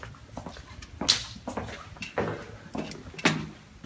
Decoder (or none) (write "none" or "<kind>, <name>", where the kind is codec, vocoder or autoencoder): none